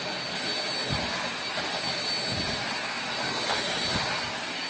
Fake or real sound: real